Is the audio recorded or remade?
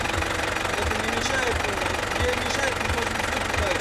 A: recorded